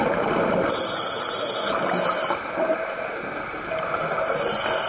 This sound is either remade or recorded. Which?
recorded